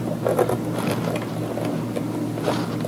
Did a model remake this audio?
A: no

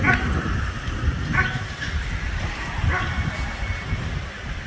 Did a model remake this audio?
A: no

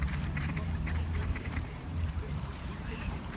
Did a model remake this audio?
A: yes